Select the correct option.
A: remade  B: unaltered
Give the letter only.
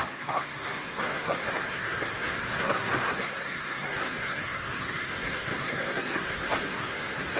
A